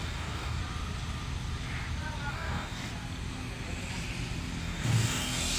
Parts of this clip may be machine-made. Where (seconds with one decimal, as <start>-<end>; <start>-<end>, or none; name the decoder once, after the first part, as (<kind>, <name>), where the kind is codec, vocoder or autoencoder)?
0.0-0.6 (codec, DAC); 2.3-2.9; 4.6-5.6